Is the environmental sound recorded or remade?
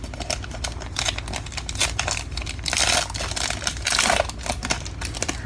recorded